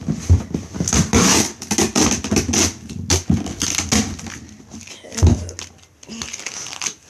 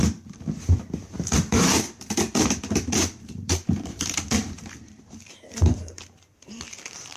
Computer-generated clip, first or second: second